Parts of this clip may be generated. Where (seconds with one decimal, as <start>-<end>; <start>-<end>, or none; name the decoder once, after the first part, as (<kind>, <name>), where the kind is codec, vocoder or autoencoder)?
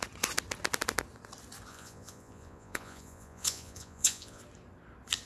1.7-4.4 (vocoder, Vocos)